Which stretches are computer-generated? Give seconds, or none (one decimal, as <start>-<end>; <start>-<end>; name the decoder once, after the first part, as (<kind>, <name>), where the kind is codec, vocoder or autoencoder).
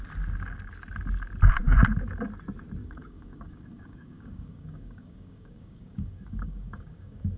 2.8-7.4 (codec, DAC)